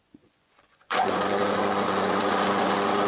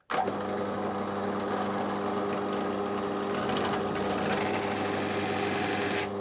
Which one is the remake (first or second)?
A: first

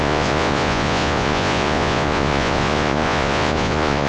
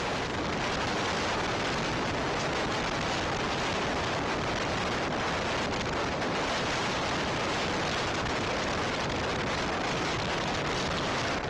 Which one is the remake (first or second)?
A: first